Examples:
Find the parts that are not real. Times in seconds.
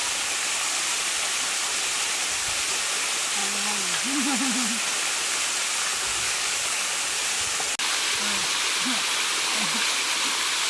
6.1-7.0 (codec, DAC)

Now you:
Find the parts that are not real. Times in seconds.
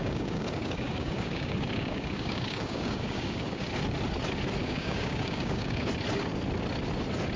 0.0-3.6 (codec, DAC); 4.6-5.9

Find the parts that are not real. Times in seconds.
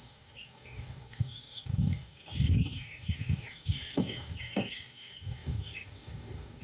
0.0-6.6 (codec, DAC)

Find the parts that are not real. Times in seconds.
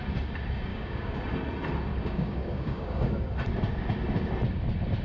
0.7-1.2 (codec, DAC); 1.9-3.3